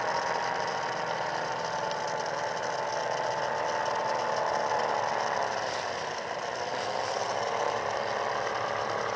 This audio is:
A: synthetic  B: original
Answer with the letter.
B